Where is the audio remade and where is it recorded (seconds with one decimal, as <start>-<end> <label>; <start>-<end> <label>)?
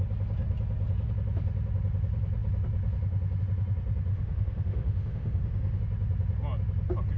0.0-4.1 recorded; 4.1-5.8 remade; 5.8-7.2 recorded